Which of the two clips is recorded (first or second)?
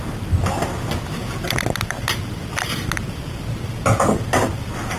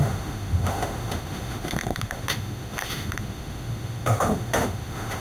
first